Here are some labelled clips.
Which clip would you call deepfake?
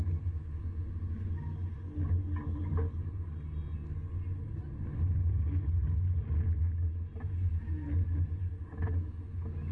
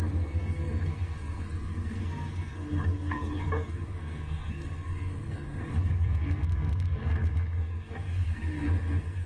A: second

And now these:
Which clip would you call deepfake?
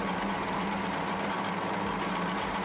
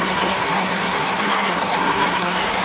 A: second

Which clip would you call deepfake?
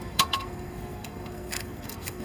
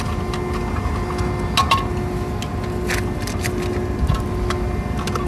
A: first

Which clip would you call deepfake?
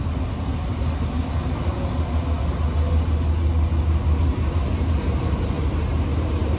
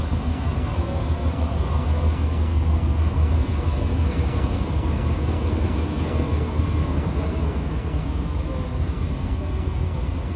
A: second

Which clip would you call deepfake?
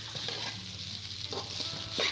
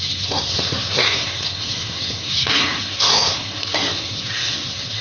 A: second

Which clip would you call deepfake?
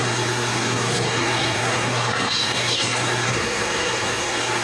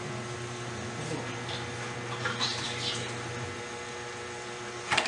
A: first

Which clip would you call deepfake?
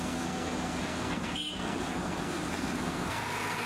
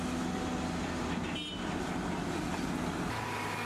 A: first